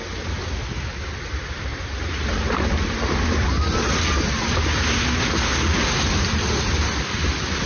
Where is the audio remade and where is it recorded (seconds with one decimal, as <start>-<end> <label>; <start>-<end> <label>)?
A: 0.0-7.7 recorded